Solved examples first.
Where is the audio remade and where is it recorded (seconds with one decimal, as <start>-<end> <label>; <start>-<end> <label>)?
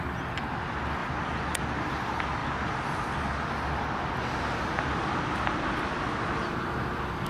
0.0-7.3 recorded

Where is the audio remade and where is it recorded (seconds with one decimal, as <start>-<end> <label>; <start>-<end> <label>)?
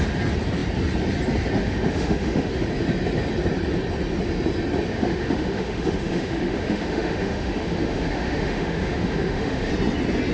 0.0-1.6 recorded; 1.6-2.6 remade; 2.6-4.9 recorded; 4.9-9.7 remade; 9.7-10.3 recorded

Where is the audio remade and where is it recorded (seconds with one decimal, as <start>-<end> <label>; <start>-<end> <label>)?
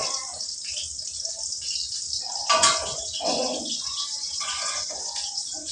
0.0-2.4 recorded; 2.4-5.7 remade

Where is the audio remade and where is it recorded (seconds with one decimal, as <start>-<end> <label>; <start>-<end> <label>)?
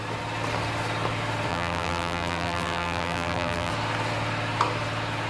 0.0-1.5 recorded; 1.5-3.7 remade; 3.7-5.3 recorded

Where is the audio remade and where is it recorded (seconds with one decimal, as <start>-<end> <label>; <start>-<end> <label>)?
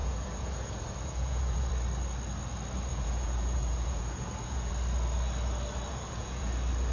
0.0-1.7 remade; 1.7-2.9 recorded; 2.9-4.7 remade; 4.7-5.9 recorded; 5.9-6.5 remade; 6.5-6.9 recorded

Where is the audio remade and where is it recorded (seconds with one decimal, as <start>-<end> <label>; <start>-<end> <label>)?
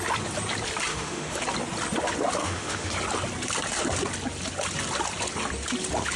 0.0-0.9 recorded; 0.9-1.4 remade; 1.4-2.4 recorded; 2.4-2.9 remade; 2.9-6.2 recorded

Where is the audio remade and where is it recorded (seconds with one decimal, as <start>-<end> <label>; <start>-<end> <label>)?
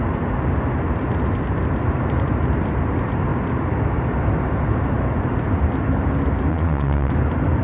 0.0-6.5 recorded; 6.5-7.1 remade; 7.1-7.6 recorded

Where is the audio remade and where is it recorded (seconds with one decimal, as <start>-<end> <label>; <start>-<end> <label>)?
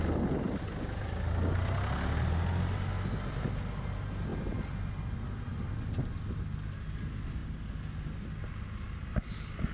0.0-9.7 recorded